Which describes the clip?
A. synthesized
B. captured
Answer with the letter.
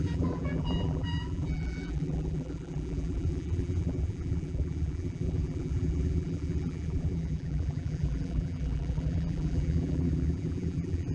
A